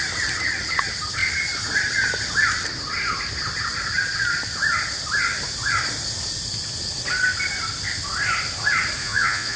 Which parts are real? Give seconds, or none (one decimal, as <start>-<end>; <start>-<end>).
0.0-9.0